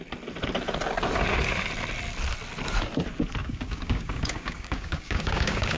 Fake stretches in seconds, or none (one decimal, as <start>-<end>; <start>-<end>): 3.4-5.8